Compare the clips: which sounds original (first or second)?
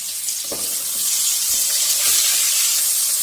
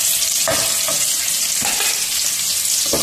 second